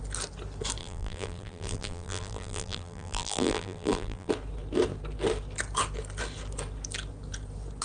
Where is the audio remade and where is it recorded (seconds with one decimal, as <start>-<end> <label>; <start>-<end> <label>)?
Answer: 0.0-0.8 recorded; 0.8-4.3 remade; 4.3-7.8 recorded